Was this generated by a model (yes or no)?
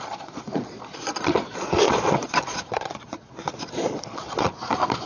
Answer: yes